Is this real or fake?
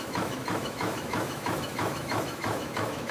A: fake